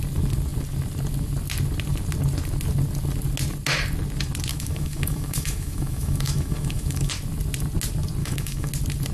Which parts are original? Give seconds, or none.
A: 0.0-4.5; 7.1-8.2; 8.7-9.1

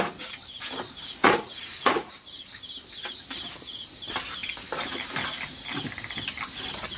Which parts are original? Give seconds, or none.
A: 0.0-1.2; 2.1-7.0

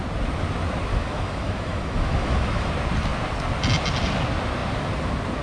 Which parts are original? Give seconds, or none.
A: 0.0-0.9; 2.7-5.4

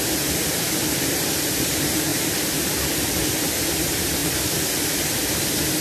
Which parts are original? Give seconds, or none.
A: 2.1-3.4; 4.2-5.8